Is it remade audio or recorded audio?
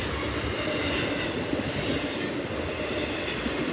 recorded